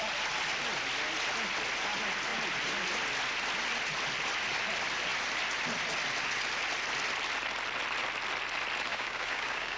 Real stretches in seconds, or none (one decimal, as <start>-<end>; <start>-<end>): 0.0-8.9